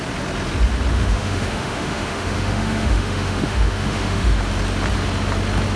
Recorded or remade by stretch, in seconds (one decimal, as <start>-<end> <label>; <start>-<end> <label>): 0.0-0.9 recorded; 0.9-4.4 remade; 4.4-5.8 recorded